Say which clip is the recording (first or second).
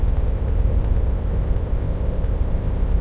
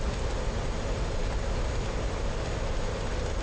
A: second